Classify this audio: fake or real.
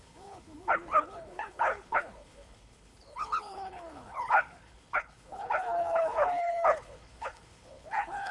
fake